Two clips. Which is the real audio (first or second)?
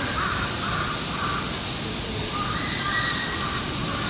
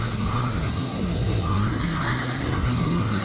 first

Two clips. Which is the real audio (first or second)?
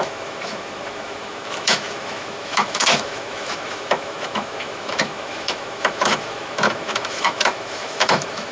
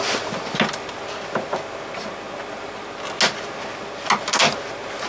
second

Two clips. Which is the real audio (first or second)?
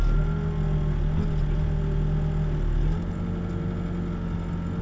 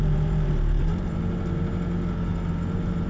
first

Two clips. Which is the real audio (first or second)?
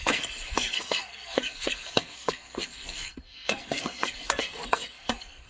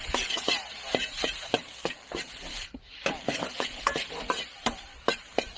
second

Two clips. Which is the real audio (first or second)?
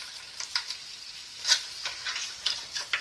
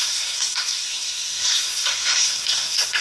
first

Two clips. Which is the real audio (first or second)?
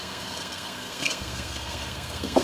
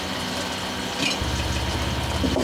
second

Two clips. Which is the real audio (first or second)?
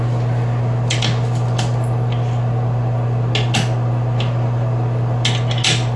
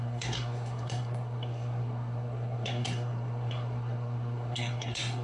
first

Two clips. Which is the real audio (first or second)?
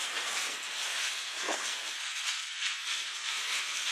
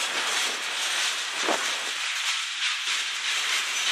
second